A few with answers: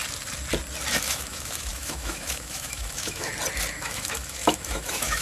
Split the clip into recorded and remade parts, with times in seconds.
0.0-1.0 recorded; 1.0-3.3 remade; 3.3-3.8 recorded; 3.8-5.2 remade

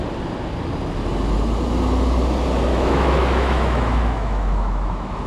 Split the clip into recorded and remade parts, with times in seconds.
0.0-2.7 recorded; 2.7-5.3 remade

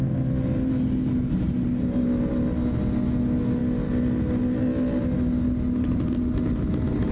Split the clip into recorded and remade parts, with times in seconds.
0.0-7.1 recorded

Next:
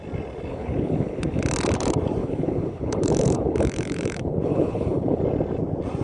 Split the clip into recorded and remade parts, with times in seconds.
0.0-0.5 recorded; 0.5-1.4 remade; 1.4-2.2 recorded; 2.2-5.2 remade; 5.2-6.0 recorded

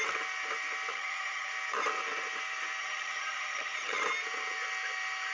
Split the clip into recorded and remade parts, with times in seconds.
0.0-0.9 recorded; 0.9-1.5 remade; 1.5-2.8 recorded; 2.8-4.0 remade; 4.0-5.3 recorded